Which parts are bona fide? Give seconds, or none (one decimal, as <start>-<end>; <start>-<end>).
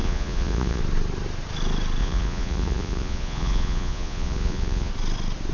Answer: 0.8-2.0; 4.9-5.5